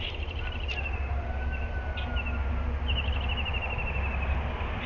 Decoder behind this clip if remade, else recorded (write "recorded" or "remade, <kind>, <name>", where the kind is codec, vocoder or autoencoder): recorded